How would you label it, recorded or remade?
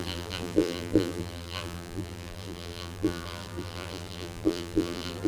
remade